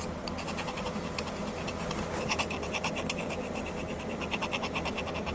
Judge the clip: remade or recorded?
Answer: recorded